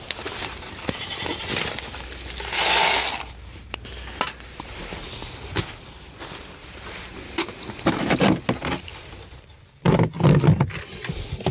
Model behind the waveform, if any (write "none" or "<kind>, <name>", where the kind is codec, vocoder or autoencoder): none